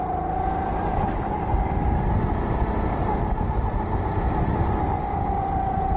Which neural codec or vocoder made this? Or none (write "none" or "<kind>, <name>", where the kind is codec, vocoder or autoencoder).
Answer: none